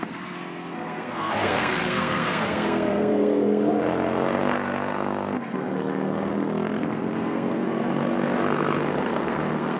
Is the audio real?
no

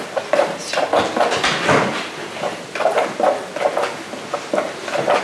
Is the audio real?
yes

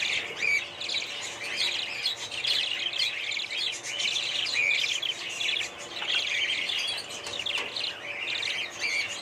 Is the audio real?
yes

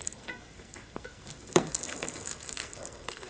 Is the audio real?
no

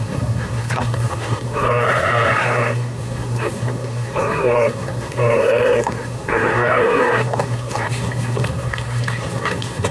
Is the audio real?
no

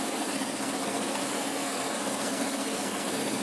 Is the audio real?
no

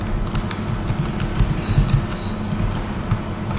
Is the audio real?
yes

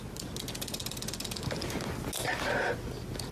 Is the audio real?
yes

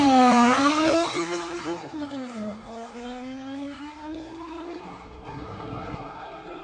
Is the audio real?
no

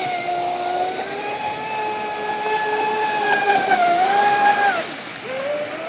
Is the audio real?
yes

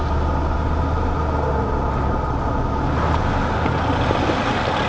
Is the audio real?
yes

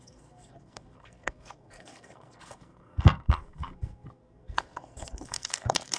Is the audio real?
no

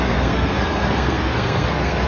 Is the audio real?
no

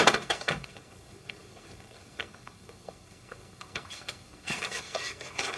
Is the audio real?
no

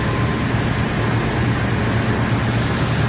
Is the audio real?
yes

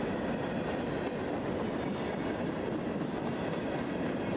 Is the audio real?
yes